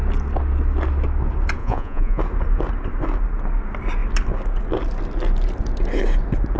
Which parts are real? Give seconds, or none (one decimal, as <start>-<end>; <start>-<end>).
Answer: 0.0-1.6; 2.2-6.6